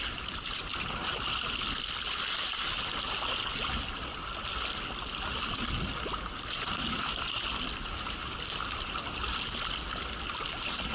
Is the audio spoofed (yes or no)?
no